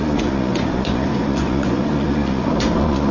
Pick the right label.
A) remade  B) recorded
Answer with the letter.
A